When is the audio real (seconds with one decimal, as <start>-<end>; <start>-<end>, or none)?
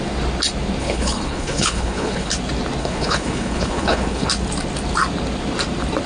0.0-0.8; 2.3-2.8; 4.3-6.1